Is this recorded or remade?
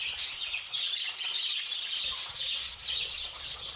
remade